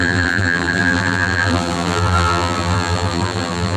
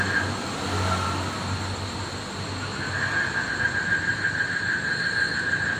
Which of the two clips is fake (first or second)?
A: first